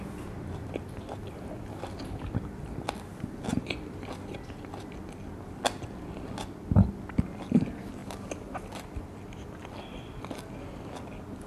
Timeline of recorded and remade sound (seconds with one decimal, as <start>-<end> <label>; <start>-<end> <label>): 0.0-11.5 recorded